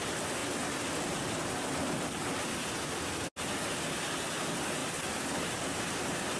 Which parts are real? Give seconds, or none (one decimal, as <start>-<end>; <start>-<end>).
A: 0.0-6.4